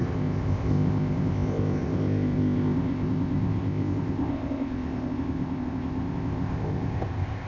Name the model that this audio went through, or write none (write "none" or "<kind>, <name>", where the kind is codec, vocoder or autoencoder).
codec, ZipCodec